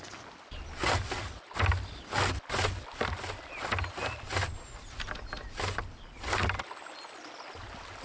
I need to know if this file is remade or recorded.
recorded